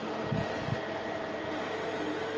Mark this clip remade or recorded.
recorded